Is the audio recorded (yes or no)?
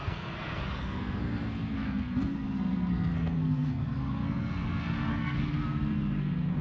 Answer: no